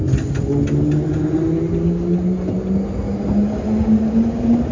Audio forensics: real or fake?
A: real